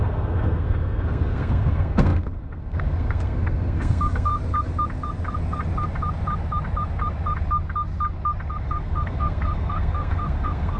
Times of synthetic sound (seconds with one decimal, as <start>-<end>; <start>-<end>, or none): 0.0-4.3; 8.6-10.8